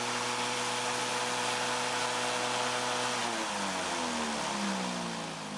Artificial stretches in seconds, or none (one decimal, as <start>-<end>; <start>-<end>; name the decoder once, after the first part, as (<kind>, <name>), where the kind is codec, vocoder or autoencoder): none